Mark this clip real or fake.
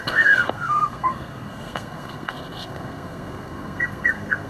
fake